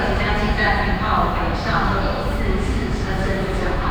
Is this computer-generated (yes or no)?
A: yes